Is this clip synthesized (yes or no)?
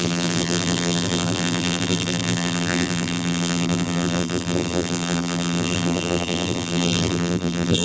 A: yes